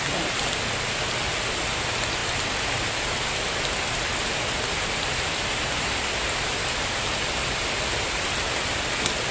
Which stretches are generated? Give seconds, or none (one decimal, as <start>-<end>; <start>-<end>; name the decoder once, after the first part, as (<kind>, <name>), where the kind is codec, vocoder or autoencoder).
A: none